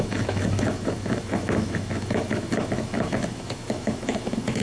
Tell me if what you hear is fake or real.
fake